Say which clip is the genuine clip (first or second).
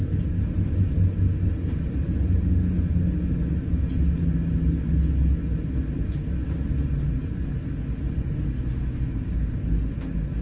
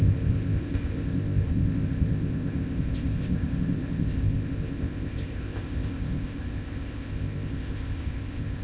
first